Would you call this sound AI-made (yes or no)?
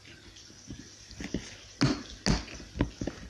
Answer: no